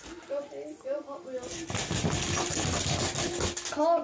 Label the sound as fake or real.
real